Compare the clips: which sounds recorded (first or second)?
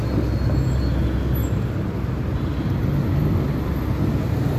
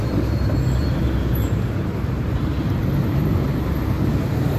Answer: first